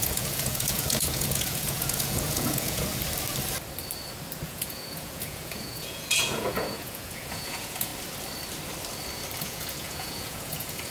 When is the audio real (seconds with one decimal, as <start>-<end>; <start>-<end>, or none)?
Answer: 2.9-4.5; 7.9-9.4